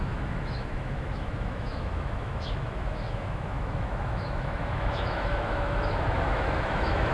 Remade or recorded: remade